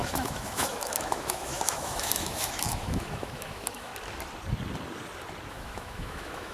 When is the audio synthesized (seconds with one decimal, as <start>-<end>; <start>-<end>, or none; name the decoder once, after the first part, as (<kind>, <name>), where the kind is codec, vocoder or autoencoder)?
0.0-3.9 (autoencoder, DAC-VAE); 5.5-6.5